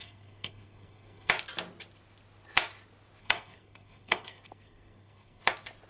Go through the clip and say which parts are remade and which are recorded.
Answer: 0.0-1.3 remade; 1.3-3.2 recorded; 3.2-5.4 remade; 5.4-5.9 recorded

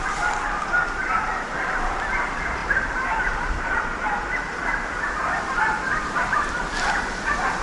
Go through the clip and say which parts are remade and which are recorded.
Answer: 0.0-2.6 recorded; 2.6-3.7 remade; 3.7-4.6 recorded; 4.6-6.6 remade; 6.6-7.6 recorded

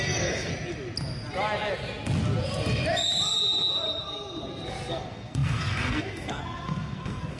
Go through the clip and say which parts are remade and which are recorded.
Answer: 0.0-0.5 remade; 0.5-4.9 recorded; 4.9-7.4 remade

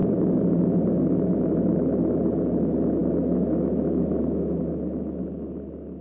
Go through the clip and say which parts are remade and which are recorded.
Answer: 0.0-3.0 recorded; 3.0-4.6 remade; 4.6-6.0 recorded

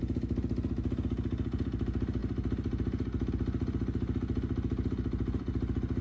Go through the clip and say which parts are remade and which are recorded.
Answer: 0.0-6.0 recorded

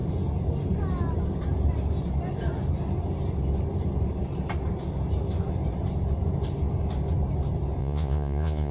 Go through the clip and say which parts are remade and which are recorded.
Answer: 0.0-7.8 recorded; 7.8-8.7 remade

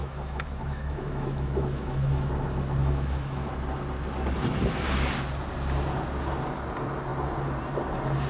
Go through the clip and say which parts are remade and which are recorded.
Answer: 0.0-2.3 remade; 2.3-2.8 recorded; 2.8-3.5 remade; 3.5-8.3 recorded